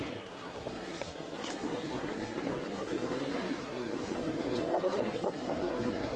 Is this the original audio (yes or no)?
no